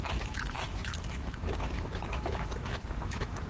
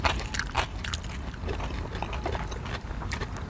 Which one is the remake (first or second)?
first